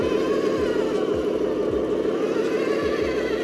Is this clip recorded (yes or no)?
yes